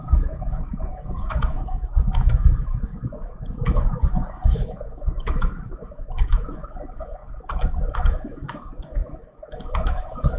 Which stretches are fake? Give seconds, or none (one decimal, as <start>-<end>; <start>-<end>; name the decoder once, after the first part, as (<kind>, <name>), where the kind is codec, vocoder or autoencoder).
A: 0.0-7.2 (autoencoder, DAC-VAE); 7.9-10.4